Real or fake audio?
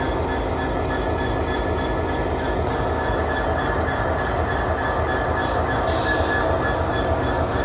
real